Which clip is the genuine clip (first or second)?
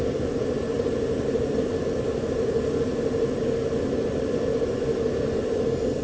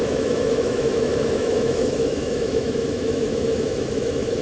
first